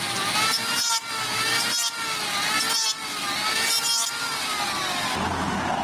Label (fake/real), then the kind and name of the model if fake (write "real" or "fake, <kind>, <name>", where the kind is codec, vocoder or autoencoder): real